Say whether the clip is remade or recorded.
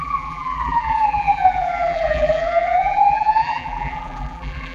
remade